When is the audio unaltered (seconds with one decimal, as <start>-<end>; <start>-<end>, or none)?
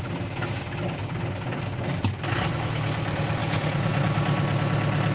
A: 0.0-3.4; 4.0-5.1